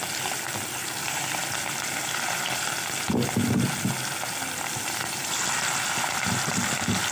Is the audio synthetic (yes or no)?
no